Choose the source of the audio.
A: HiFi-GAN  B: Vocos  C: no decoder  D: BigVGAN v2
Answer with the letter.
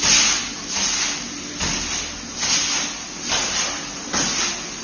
C